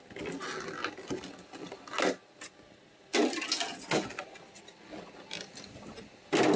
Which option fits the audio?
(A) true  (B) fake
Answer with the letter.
A